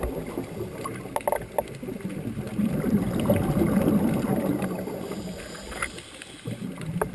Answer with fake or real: real